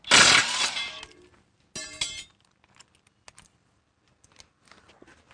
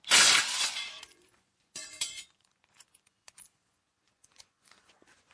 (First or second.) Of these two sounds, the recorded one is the first